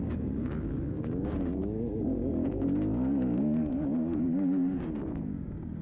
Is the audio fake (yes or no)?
yes